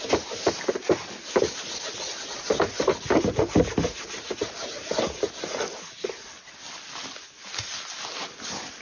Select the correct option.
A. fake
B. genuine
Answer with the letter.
B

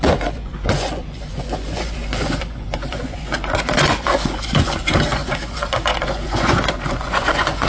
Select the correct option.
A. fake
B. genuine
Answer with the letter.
A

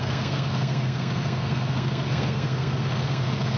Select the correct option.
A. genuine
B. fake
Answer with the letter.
B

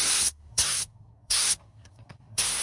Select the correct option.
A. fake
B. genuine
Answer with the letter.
A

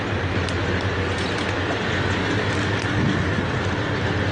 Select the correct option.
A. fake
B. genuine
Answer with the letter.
B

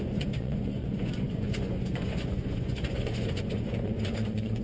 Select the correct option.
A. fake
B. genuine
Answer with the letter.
A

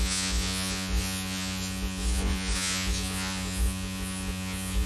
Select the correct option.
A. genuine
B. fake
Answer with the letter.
B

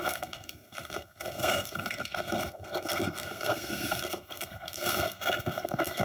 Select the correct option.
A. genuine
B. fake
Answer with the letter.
B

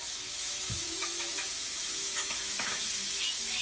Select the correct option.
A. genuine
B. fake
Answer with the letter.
B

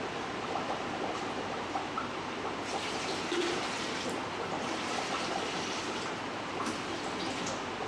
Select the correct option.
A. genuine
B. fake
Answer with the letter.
B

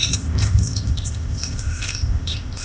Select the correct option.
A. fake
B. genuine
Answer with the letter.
A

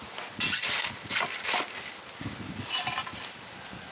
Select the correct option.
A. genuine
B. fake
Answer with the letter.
A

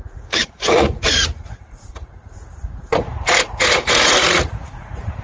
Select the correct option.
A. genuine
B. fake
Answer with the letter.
B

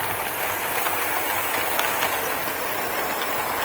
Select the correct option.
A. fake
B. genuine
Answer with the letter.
B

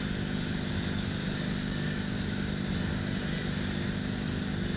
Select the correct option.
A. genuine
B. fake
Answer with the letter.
A